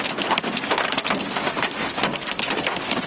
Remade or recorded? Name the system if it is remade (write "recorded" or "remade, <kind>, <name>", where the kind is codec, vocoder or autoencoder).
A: recorded